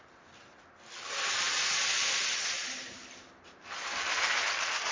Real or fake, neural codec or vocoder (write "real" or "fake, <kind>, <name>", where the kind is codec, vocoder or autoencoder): real